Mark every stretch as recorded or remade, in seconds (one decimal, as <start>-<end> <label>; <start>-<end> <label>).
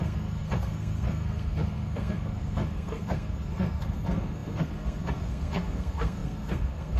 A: 0.0-7.0 remade